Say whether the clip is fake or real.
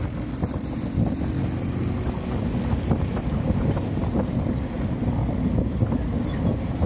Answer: real